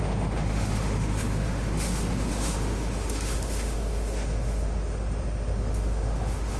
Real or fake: fake